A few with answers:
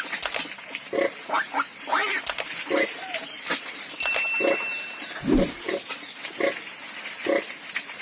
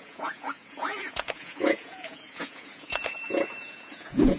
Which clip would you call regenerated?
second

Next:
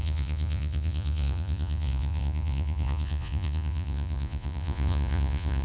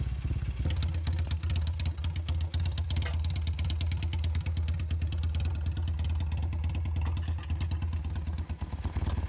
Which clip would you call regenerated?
first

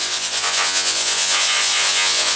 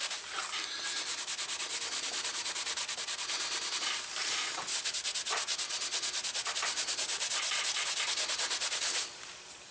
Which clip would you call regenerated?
first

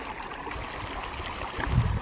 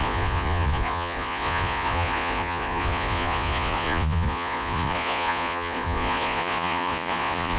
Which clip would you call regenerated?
second